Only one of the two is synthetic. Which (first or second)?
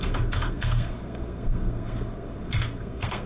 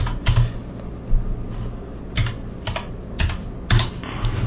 first